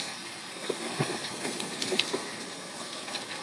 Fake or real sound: fake